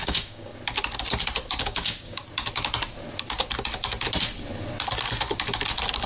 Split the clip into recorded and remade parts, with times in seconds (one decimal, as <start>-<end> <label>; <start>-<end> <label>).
0.0-0.5 remade; 0.5-1.6 recorded; 1.6-2.2 remade; 2.2-6.1 recorded